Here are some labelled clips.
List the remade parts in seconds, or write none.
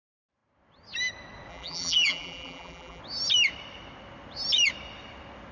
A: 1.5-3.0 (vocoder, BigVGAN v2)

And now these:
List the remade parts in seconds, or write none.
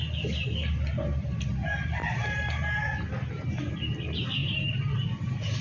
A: none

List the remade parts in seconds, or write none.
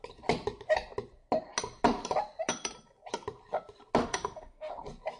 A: 4.0-4.7 (autoencoder, DAC-VAE)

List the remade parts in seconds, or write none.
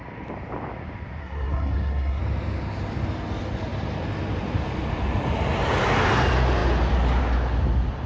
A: 1.2-2.2 (codec, SNAC)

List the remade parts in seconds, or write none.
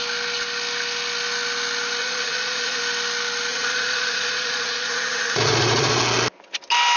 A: 2.0-2.8 (vocoder, Vocos); 3.5-6.0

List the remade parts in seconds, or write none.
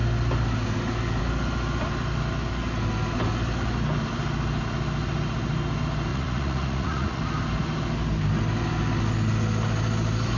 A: 6.1-7.2 (vocoder, Vocos)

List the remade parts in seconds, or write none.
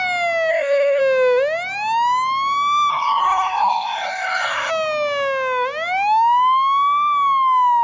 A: 0.5-1.0 (codec, SNAC); 2.9-4.7